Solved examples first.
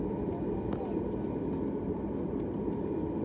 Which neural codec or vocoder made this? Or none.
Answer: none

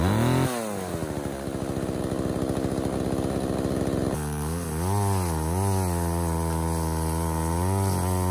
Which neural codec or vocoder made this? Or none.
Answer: none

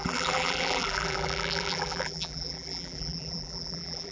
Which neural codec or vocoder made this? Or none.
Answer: vocoder, BigVGAN v2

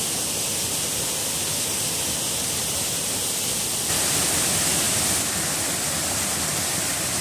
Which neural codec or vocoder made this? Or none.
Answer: none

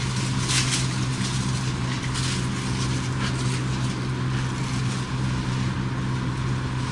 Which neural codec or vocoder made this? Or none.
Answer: none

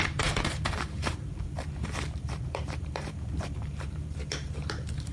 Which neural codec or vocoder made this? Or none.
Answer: vocoder, BigVGAN v2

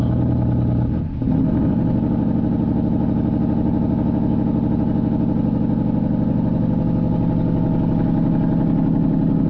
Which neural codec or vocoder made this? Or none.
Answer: none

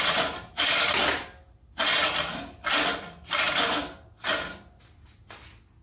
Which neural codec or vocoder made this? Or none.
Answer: none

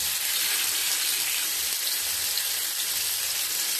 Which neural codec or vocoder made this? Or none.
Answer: vocoder, BigVGAN v2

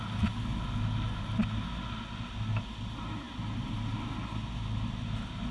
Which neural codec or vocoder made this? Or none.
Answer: none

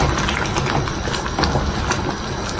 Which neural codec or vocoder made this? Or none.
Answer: none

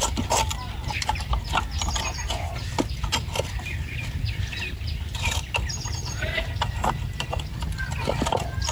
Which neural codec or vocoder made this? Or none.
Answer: vocoder, BigVGAN v2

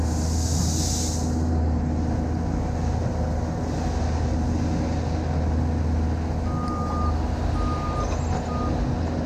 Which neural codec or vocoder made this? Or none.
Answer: none